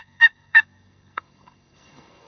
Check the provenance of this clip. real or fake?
fake